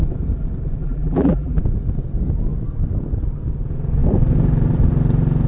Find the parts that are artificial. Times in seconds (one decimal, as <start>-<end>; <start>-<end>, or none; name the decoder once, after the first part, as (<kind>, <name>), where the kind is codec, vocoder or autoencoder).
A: 0.8-1.6 (vocoder, BigVGAN v2)